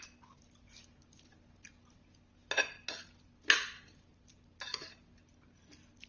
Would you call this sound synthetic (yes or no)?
no